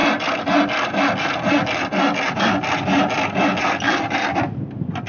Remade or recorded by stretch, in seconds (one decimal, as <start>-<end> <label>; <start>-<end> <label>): 0.0-5.1 recorded